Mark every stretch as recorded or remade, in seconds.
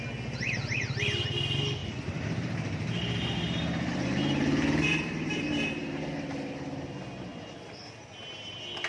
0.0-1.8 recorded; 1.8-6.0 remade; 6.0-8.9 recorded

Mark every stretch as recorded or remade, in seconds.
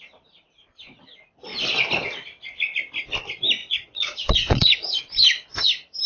0.0-3.6 recorded; 3.6-5.0 remade; 5.0-6.1 recorded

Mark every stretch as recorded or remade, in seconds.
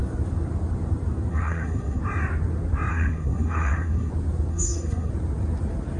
0.0-1.3 recorded; 1.3-2.0 remade; 2.0-2.9 recorded; 2.9-4.1 remade; 4.1-4.5 recorded; 4.5-5.1 remade; 5.1-6.0 recorded